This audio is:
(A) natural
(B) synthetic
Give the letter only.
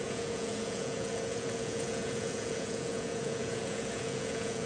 B